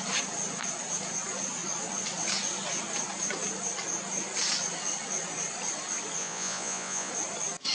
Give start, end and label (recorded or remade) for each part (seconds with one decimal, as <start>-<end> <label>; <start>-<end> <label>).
0.0-6.2 recorded; 6.2-7.1 remade; 7.1-7.7 recorded